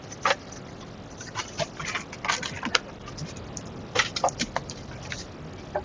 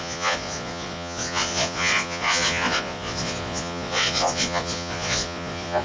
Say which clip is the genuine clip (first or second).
first